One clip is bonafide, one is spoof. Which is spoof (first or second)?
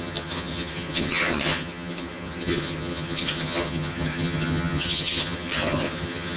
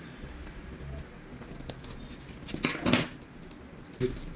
first